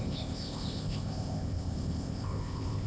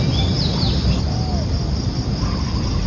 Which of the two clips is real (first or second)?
second